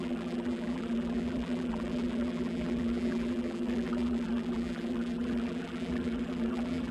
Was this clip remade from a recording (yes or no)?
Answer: yes